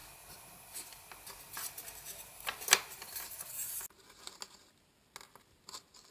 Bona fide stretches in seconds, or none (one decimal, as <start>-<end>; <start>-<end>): 0.0-6.1